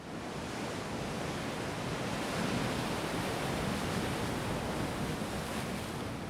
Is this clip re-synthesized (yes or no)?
no